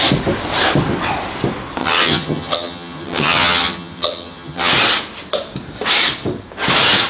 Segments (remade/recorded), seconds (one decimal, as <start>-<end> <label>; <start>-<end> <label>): 0.0-1.8 recorded; 1.8-4.7 remade; 4.7-7.1 recorded